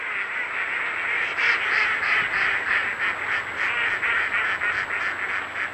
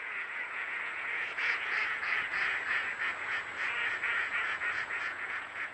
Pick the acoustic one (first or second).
first